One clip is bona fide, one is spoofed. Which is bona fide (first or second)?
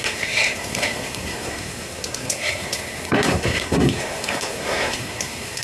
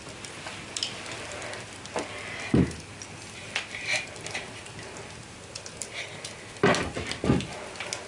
second